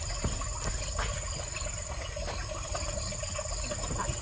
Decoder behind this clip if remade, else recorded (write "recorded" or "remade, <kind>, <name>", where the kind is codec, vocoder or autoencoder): recorded